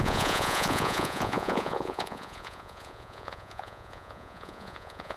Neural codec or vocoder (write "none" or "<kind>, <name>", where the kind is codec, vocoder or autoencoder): vocoder, Vocos